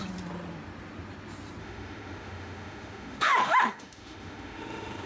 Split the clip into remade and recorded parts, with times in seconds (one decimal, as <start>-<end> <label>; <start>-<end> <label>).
0.0-1.6 recorded; 1.6-5.1 remade